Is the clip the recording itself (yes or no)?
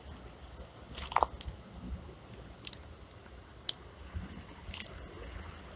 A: yes